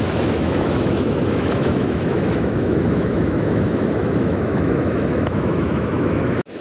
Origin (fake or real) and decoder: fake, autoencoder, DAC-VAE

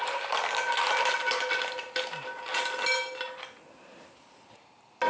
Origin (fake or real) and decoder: real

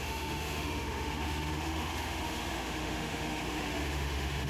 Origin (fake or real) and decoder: fake, autoencoder, DAC-VAE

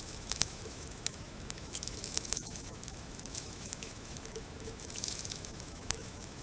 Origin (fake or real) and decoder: fake, autoencoder, DAC-VAE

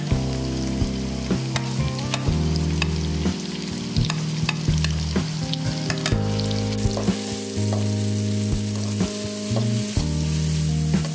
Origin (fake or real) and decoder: real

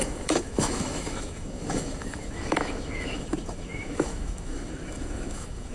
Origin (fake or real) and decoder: fake, autoencoder, DAC-VAE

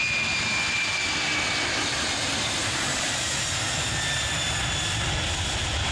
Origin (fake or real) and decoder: real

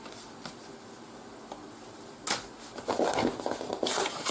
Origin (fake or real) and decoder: real